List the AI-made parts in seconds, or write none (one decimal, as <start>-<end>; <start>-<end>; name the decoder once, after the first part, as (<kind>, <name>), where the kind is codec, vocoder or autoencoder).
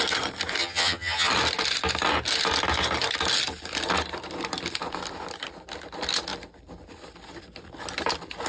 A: 0.6-1.3 (vocoder, HiFi-GAN)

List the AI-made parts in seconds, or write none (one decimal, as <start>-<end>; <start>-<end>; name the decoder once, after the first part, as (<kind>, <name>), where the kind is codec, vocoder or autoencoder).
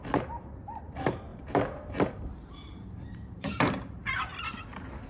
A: 0.0-4.3 (vocoder, BigVGAN v2)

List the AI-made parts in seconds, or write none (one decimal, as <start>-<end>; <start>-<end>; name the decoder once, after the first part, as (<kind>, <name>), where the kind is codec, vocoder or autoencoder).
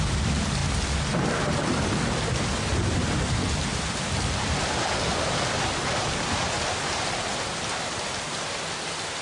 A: none